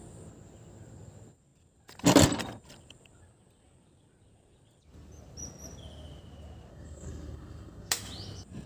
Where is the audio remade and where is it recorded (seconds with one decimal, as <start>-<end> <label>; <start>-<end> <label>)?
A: 0.0-6.7 recorded; 6.7-7.9 remade; 7.9-8.7 recorded